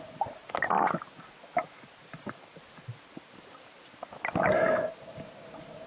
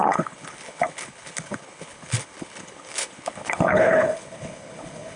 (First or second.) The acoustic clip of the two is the first